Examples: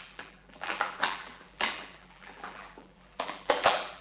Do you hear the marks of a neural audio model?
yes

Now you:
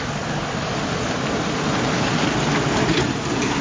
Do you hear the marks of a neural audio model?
no